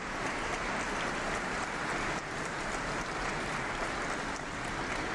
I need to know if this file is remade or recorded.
recorded